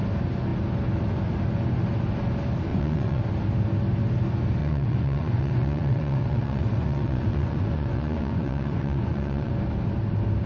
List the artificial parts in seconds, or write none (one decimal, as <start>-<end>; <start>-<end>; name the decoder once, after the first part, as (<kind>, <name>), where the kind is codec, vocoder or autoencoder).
2.7-3.2 (vocoder, Vocos); 4.6-9.5